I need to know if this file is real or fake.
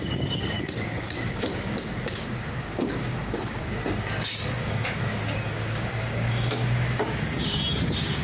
fake